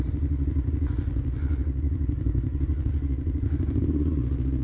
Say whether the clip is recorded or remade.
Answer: remade